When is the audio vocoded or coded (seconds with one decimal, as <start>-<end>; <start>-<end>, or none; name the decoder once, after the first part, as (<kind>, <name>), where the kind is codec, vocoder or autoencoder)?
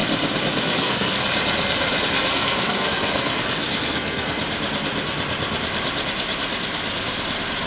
0.6-1.2 (codec, SNAC); 2.1-4.4